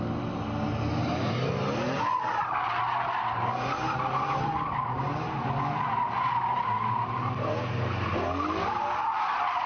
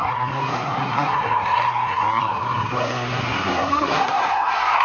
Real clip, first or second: first